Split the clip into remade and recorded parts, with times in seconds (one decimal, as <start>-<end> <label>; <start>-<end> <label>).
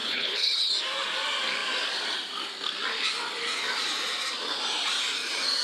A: 0.0-0.7 remade; 0.7-5.6 recorded